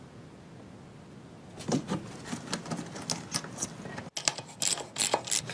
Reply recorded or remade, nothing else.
recorded